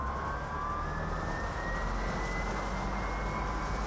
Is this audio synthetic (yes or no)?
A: no